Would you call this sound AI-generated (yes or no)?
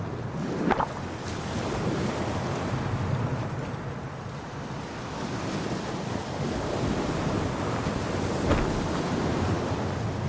no